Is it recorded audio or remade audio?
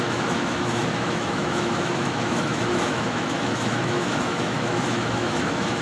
remade